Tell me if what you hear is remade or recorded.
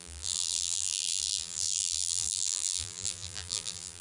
remade